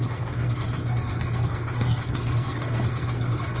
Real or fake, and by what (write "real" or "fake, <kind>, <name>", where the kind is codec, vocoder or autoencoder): fake, codec, SNAC